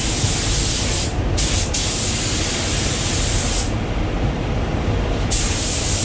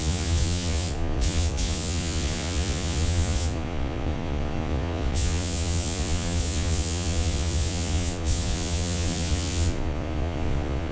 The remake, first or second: second